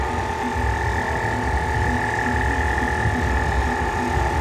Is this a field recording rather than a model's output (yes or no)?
yes